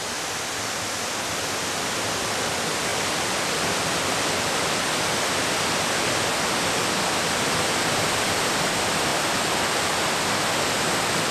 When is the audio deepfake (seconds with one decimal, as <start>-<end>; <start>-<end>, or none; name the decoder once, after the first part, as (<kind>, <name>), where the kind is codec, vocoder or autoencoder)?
none